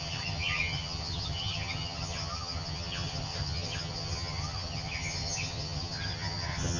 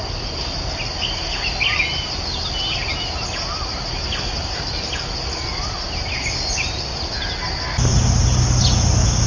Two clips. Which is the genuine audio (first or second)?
second